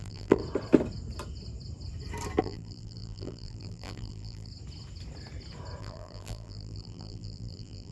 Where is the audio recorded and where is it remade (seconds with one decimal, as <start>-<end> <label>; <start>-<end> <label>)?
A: 0.0-0.4 remade; 0.4-2.4 recorded; 2.4-4.5 remade; 4.5-5.8 recorded; 5.8-7.9 remade